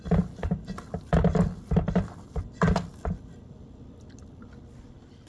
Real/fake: real